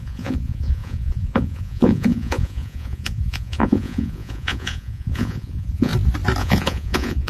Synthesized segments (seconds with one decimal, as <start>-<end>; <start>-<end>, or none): 0.0-5.9; 6.4-7.3